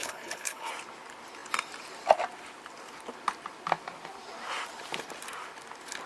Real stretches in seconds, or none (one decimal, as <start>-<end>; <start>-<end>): 0.7-6.1